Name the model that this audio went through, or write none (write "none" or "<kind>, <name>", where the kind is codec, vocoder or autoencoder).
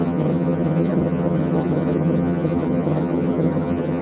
vocoder, HiFi-GAN